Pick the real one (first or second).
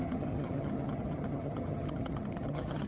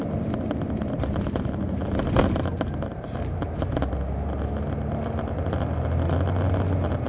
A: second